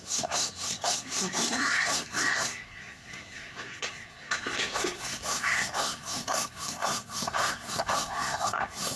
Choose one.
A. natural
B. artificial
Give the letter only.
B